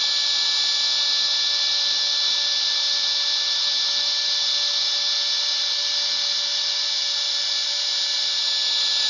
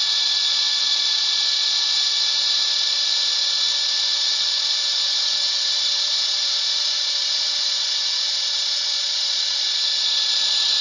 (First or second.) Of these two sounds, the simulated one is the second